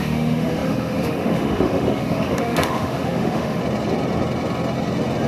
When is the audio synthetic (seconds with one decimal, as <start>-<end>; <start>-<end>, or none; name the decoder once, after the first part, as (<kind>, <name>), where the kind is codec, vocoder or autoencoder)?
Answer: 0.0-3.6 (autoencoder, DAC-VAE)